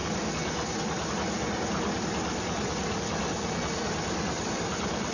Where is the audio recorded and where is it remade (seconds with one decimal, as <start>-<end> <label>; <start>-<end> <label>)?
0.0-5.1 recorded